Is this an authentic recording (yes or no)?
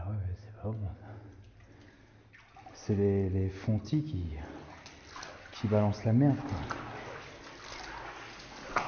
yes